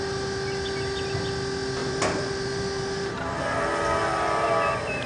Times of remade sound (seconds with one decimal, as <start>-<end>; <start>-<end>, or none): 1.8-3.4

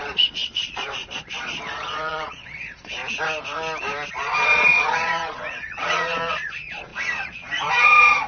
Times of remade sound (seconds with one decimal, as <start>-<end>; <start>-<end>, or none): 0.0-3.0; 4.1-8.3

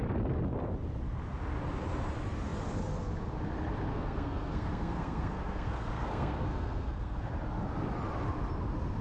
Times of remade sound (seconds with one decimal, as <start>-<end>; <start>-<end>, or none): 3.9-7.3

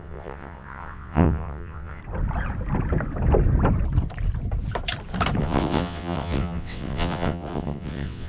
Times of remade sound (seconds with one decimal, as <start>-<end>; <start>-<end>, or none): 0.0-2.0; 5.4-8.3

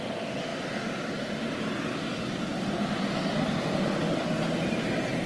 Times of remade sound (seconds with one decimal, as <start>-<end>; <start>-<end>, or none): none

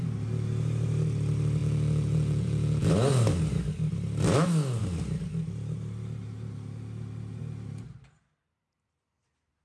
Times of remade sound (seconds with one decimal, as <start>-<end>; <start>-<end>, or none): 1.6-2.9

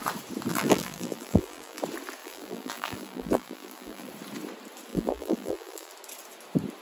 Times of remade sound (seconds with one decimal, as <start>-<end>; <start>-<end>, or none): 0.5-1.8; 2.2-4.1; 4.9-5.9